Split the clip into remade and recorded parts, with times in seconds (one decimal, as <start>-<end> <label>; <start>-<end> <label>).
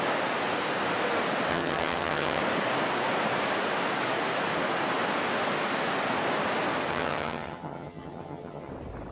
0.0-1.5 recorded; 1.5-2.4 remade; 2.4-6.9 recorded; 6.9-8.7 remade; 8.7-9.1 recorded